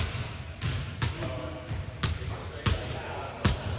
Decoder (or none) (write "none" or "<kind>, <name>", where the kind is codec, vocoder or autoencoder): none